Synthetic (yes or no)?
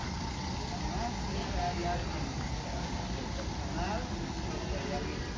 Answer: no